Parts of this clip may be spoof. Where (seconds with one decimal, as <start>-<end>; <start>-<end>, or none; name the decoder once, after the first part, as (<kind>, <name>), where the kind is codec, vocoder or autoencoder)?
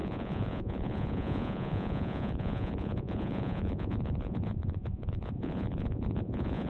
0.0-6.7 (vocoder, Vocos)